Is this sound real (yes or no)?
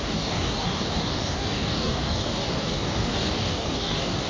no